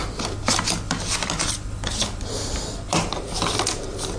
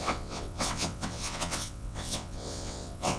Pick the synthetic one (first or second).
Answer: second